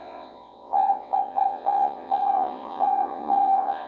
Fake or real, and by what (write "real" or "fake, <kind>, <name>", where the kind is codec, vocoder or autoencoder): fake, vocoder, WaveNeXt